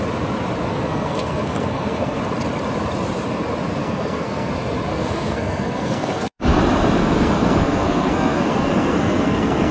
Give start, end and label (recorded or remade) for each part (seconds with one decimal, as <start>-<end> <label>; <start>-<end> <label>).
0.0-0.7 recorded; 0.7-2.2 remade; 2.2-3.8 recorded; 3.8-4.5 remade; 4.5-4.9 recorded; 4.9-6.6 remade; 6.6-7.0 recorded; 7.0-9.7 remade